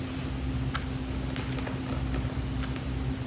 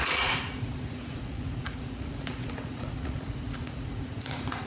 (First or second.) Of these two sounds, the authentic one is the first